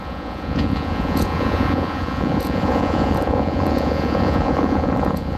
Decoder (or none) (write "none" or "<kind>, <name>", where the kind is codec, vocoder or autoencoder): vocoder, Vocos